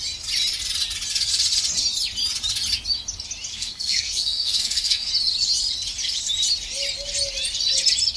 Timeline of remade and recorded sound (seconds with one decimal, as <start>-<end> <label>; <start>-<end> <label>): 0.0-3.5 recorded; 3.5-5.1 remade; 5.1-8.2 recorded